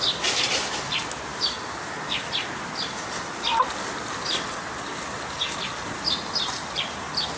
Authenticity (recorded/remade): recorded